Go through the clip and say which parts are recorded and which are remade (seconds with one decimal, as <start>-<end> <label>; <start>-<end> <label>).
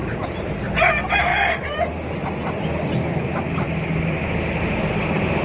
0.0-5.4 recorded